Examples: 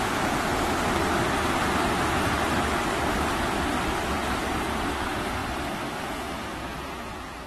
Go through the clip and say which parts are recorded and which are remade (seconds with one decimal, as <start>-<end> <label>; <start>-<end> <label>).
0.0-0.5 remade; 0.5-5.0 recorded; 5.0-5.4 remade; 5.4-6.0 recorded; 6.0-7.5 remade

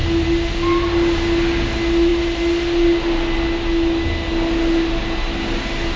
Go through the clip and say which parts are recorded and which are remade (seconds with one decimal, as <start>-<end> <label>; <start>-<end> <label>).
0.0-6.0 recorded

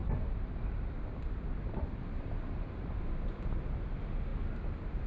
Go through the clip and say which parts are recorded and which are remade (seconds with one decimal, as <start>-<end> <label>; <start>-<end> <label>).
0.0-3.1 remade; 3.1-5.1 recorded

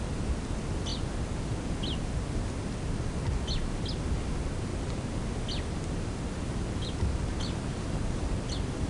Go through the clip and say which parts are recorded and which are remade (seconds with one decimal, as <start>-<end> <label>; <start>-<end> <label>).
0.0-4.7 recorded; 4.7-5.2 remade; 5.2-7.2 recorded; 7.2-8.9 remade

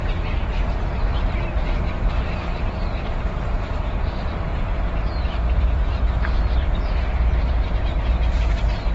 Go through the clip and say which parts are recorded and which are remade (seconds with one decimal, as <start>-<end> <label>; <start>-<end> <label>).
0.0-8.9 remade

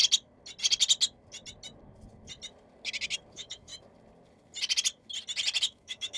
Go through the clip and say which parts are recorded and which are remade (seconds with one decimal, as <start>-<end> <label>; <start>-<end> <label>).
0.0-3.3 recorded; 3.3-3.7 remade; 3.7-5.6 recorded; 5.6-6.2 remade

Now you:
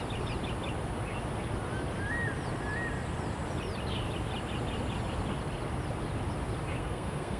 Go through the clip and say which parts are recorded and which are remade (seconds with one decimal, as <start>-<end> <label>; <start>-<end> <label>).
0.0-6.8 recorded; 6.8-7.4 remade

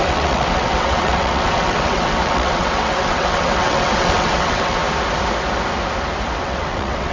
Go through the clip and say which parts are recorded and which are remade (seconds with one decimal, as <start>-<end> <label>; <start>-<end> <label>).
0.0-4.8 remade; 4.8-6.4 recorded; 6.4-7.1 remade